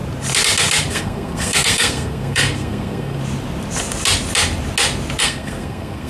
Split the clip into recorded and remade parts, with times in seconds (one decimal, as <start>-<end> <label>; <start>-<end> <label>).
0.0-0.9 recorded; 0.9-3.2 remade; 3.2-5.2 recorded; 5.2-6.1 remade

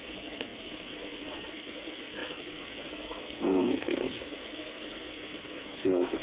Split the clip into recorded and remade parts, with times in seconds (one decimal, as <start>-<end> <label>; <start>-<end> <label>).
0.0-6.2 remade

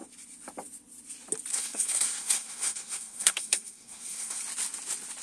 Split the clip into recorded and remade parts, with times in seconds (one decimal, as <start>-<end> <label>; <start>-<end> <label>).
0.0-1.5 recorded; 1.5-4.4 remade; 4.4-5.2 recorded